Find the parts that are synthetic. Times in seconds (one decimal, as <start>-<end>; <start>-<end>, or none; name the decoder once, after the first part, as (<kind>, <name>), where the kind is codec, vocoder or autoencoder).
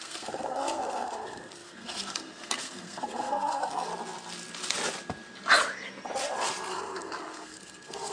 0.0-3.9 (codec, SNAC); 6.7-8.1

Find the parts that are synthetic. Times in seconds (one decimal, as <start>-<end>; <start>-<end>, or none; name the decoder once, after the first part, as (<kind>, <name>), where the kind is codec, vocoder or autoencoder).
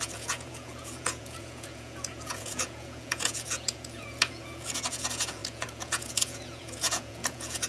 0.0-7.7 (vocoder, Vocos)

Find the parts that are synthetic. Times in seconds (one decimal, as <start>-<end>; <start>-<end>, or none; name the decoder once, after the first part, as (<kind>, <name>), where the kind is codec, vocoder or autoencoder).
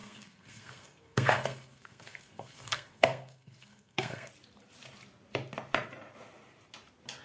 0.0-4.3 (codec, SNAC)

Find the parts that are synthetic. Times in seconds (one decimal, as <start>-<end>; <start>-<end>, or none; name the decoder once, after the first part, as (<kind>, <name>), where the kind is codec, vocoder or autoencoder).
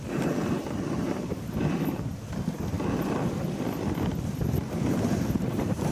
0.0-0.4 (vocoder, BigVGAN v2); 1.0-2.1; 4.3-5.9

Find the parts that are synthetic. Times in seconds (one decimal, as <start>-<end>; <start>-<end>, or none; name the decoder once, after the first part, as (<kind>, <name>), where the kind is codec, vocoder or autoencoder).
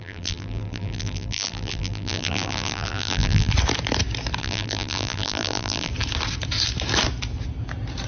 0.0-3.5 (vocoder, BigVGAN v2); 4.4-5.9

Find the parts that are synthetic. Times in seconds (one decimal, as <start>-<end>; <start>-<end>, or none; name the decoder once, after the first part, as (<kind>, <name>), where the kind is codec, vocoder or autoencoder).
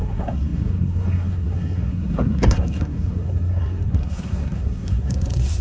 0.0-5.6 (codec, SNAC)